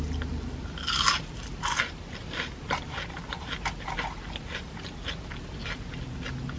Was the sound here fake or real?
real